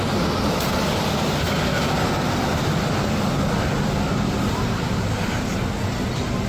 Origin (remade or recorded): recorded